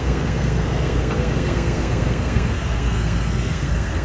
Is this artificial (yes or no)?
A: yes